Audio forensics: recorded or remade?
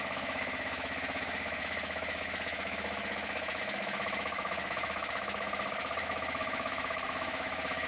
remade